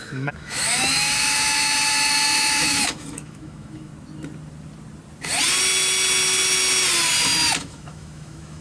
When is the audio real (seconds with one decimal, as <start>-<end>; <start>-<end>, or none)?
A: 3.9-7.6